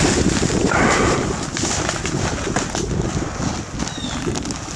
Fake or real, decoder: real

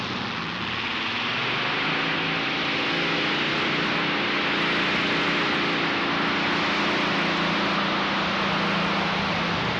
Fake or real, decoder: real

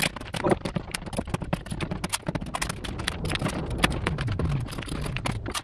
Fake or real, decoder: real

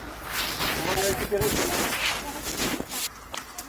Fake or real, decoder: real